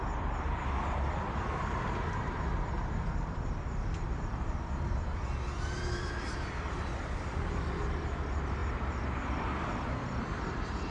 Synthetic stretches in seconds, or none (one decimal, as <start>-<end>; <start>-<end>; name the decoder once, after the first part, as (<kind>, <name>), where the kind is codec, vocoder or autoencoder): 0.0-10.9 (vocoder, BigVGAN v2)